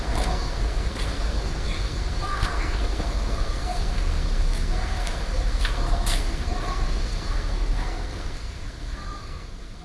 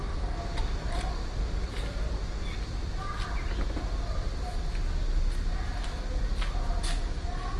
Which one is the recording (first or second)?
second